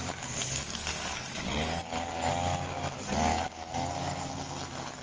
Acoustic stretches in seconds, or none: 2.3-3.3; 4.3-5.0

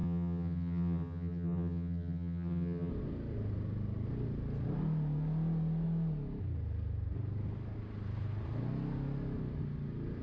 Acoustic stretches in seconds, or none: 2.9-10.2

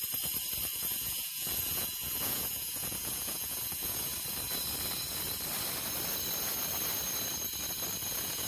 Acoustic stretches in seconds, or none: 0.0-0.7; 4.1-8.1

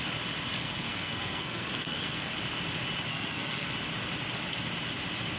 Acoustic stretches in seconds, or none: 0.0-0.6; 2.3-3.1; 3.7-5.4